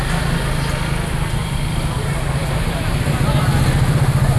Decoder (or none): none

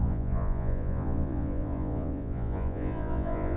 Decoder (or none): vocoder, Vocos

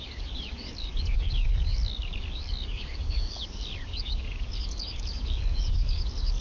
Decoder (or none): codec, DAC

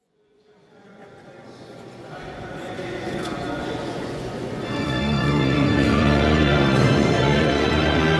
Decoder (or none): vocoder, Vocos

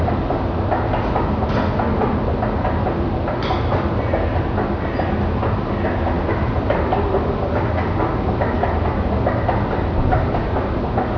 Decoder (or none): none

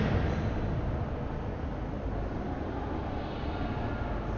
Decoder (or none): none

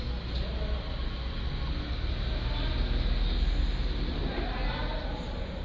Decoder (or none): none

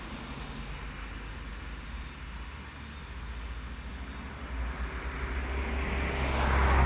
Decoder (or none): none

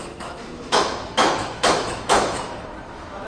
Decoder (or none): autoencoder, DAC-VAE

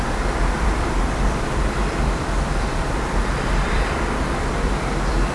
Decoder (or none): vocoder, BigVGAN v2